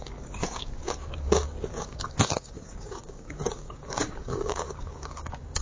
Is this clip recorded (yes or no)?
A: no